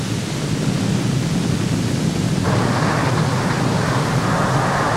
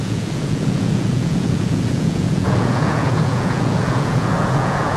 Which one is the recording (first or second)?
first